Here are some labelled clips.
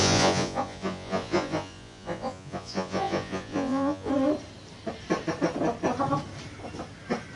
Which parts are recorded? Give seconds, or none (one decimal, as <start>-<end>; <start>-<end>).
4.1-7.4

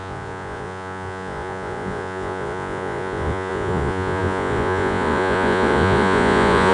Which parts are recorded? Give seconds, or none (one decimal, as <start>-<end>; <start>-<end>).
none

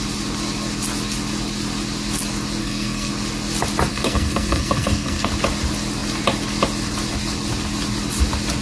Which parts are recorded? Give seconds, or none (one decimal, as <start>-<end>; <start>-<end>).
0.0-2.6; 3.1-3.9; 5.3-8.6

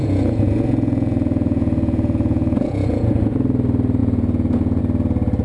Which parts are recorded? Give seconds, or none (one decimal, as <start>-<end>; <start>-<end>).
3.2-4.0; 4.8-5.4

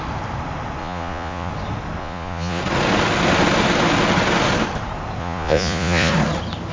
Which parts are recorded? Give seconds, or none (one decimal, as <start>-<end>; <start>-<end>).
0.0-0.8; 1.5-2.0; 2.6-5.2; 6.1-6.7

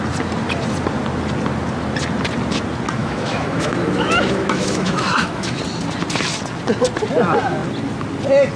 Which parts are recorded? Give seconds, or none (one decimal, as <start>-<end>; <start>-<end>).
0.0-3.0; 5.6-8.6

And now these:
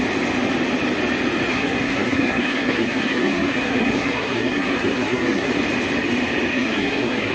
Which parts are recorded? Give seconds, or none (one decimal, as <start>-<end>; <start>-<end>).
0.0-1.5; 5.5-6.5

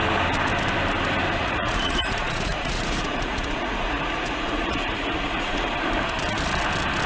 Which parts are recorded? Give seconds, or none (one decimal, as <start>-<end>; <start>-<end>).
0.0-1.4; 5.7-7.1